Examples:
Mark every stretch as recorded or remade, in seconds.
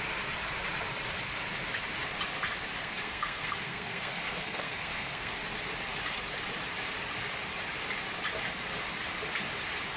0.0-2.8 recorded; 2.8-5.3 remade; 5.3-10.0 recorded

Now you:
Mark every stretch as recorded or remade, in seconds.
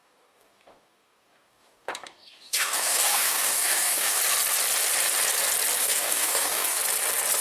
0.0-4.2 remade; 4.2-5.8 recorded; 5.8-6.8 remade; 6.8-7.4 recorded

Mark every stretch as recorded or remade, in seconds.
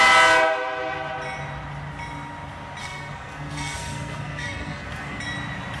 0.0-2.8 recorded; 2.8-5.2 remade; 5.2-5.8 recorded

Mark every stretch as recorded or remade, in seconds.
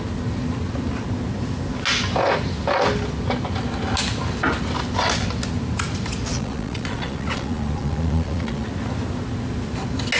0.0-6.3 recorded; 6.3-8.7 remade; 8.7-10.2 recorded